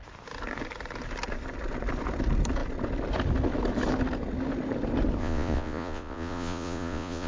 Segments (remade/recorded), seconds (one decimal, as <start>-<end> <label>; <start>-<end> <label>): 0.0-5.2 recorded; 5.2-7.3 remade

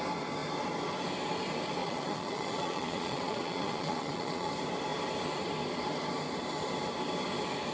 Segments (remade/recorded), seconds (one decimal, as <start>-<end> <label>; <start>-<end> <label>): 0.0-1.8 recorded; 1.8-4.5 remade; 4.5-7.7 recorded